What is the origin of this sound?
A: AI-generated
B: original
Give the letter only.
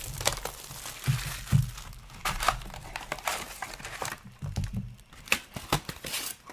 B